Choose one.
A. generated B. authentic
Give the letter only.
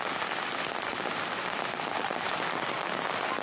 B